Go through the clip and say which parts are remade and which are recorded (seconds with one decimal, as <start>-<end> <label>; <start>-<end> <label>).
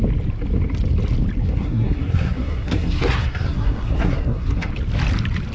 0.0-1.4 recorded; 1.4-4.7 remade; 4.7-5.5 recorded